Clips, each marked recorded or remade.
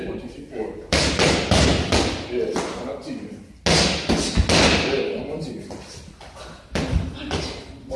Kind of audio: recorded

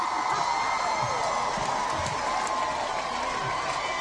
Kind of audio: recorded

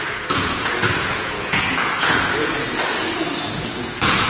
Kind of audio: remade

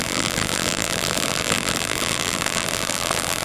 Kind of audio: remade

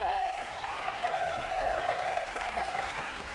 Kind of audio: remade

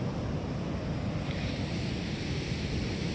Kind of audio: recorded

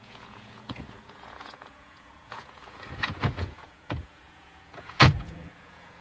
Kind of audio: remade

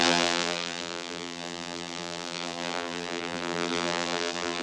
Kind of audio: remade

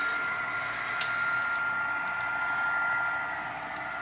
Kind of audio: recorded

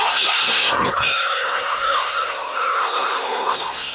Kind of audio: remade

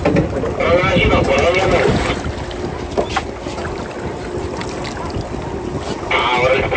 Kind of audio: recorded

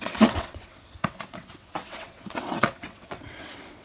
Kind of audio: remade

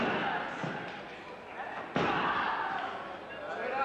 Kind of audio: remade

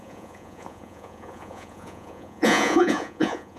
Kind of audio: remade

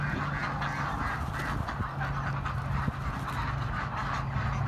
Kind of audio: recorded